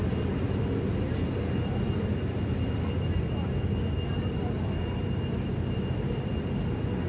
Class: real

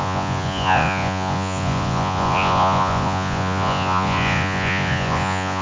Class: fake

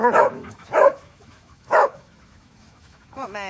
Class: fake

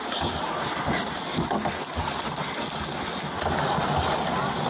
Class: real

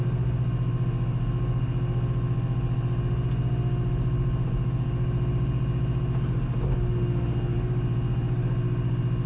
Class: real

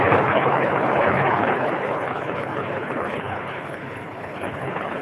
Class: fake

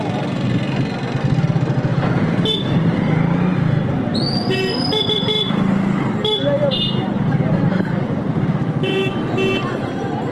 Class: real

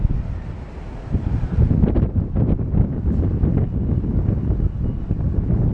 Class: real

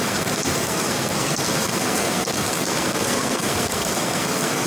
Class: fake